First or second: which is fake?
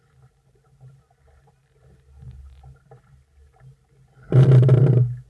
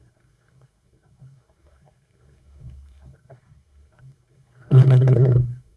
second